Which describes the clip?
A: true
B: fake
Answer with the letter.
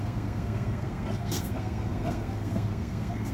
B